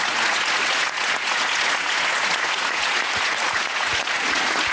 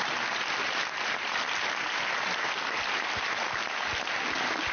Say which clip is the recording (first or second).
second